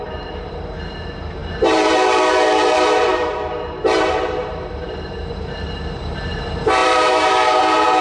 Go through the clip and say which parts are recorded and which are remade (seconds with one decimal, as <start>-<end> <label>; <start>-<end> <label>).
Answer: 0.0-8.0 remade